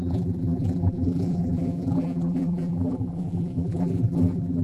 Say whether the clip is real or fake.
fake